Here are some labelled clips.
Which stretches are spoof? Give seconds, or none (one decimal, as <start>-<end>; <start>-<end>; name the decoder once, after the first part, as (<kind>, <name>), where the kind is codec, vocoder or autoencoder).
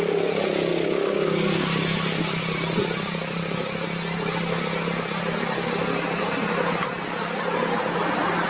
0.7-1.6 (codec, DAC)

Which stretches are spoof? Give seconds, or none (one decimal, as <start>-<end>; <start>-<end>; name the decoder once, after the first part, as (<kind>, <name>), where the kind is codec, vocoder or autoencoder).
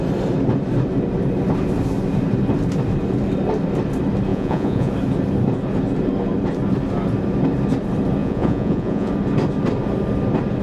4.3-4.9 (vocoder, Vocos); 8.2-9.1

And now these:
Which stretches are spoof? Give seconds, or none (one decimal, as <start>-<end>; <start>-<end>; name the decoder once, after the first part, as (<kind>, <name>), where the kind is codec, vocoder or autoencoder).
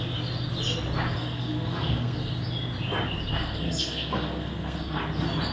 1.2-2.3 (codec, SNAC); 3.3-5.0